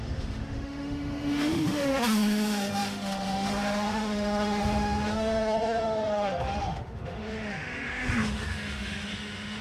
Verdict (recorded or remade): remade